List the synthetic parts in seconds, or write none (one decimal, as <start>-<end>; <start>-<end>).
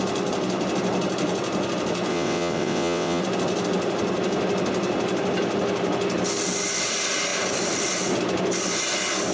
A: 2.1-3.2